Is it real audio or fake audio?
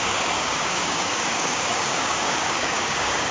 fake